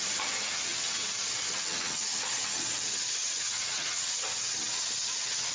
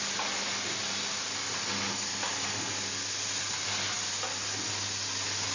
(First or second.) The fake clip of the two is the first